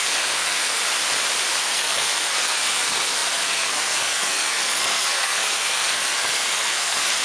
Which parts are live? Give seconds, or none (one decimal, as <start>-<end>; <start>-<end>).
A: 0.8-1.6